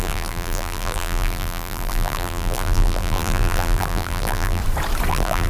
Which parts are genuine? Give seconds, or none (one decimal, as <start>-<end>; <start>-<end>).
4.6-5.1